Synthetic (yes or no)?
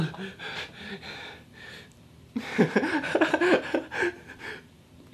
no